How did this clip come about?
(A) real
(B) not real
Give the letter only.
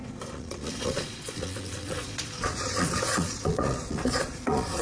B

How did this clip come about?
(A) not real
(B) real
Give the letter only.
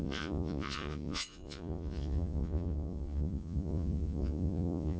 A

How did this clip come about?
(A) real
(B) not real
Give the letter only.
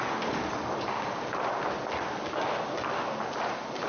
A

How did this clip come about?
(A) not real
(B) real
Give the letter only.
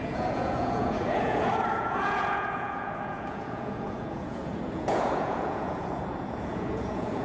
A